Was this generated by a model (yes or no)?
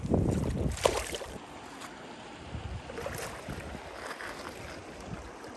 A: no